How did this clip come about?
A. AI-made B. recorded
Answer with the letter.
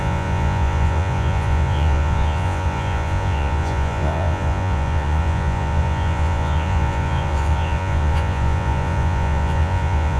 A